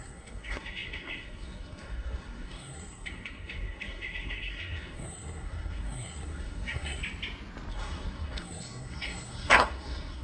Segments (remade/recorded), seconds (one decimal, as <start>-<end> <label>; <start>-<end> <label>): 0.0-7.0 remade; 7.0-7.7 recorded; 7.7-10.2 remade